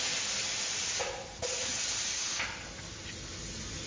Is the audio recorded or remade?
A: recorded